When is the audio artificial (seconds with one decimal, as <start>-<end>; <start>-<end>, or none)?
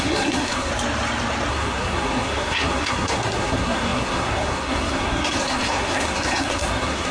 0.0-0.7; 1.5-7.1